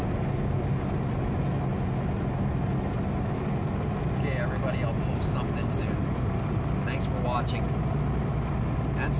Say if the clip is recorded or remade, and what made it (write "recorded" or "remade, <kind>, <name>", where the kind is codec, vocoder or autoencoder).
recorded